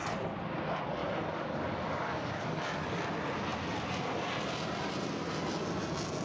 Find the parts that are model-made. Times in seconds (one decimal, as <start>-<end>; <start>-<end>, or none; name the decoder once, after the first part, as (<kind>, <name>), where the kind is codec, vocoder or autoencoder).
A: 1.0-3.0 (codec, DAC)